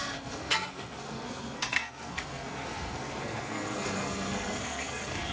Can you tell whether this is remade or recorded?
remade